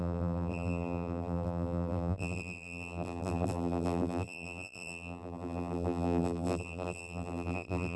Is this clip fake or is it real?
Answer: fake